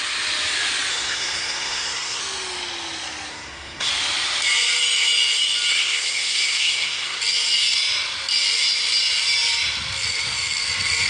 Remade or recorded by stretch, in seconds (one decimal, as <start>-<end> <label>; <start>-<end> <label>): 0.0-0.9 recorded; 0.9-2.2 remade; 2.2-3.3 recorded; 3.3-3.9 remade; 3.9-5.7 recorded; 5.7-7.2 remade; 7.2-11.1 recorded